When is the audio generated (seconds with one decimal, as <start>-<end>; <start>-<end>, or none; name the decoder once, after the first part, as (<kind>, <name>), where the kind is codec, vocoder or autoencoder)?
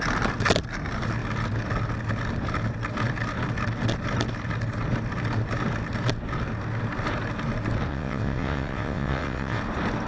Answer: 7.9-9.6 (vocoder, WaveNeXt)